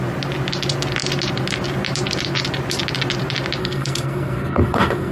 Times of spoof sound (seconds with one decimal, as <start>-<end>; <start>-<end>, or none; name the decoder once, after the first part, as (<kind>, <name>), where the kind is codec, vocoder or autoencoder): 3.6-5.1 (codec, SNAC)

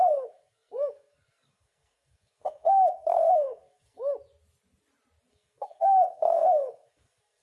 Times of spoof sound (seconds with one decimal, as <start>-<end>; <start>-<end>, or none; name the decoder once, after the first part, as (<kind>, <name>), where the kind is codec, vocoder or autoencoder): 0.0-4.1 (codec, SNAC); 5.3-7.4

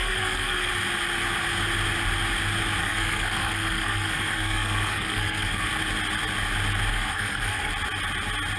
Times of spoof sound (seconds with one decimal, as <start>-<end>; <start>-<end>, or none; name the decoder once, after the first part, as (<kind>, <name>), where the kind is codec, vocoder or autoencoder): 0.0-0.7 (codec, SNAC); 2.8-5.7; 6.9-7.7

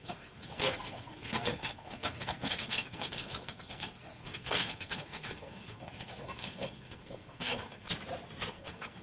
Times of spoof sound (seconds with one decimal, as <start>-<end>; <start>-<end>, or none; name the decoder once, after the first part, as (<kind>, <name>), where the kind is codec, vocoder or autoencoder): 0.0-7.9 (codec, SNAC); 8.5-9.0

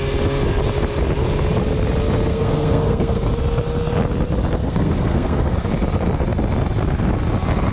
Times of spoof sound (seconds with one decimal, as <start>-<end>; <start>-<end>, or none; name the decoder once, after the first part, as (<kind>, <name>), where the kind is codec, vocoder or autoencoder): 2.3-3.3 (codec, SNAC); 4.6-5.7

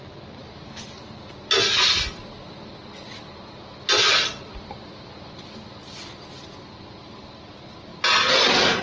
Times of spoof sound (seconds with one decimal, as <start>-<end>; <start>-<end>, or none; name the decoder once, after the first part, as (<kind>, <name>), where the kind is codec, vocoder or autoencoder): none

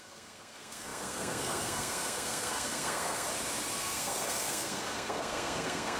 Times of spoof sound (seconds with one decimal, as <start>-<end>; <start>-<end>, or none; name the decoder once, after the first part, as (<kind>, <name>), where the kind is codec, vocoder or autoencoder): 0.0-3.3 (codec, SNAC); 3.8-6.0